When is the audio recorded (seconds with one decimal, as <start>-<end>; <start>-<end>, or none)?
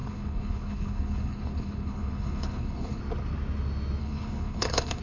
3.0-4.0